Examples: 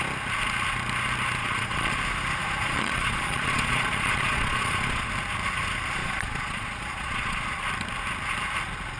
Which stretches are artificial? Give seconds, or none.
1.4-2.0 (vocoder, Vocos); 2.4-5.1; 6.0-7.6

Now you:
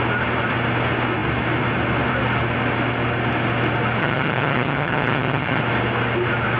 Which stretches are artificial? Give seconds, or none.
4.0-5.6 (vocoder, HiFi-GAN)

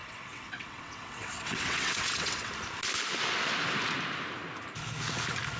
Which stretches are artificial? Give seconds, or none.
0.0-2.5 (vocoder, WaveNeXt)